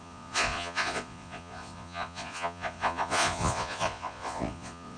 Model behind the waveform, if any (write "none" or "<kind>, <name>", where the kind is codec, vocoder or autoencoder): vocoder, Vocos